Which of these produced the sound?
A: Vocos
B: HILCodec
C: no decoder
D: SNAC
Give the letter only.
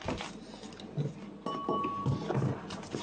C